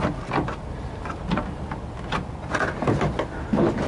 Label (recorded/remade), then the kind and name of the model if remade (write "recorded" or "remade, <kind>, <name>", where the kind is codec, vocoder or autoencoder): recorded